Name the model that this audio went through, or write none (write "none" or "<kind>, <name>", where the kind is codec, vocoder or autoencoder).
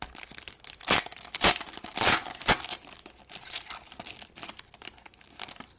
none